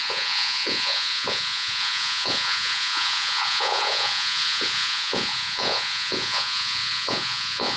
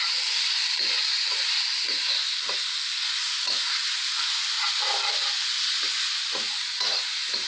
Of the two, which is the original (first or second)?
second